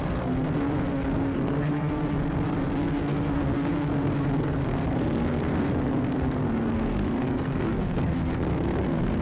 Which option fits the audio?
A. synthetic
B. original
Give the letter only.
A